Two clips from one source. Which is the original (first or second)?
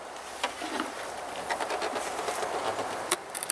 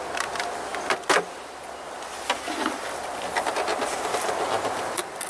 second